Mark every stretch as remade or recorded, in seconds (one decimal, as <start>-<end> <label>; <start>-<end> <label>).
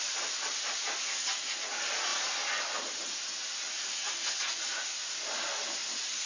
0.0-6.3 recorded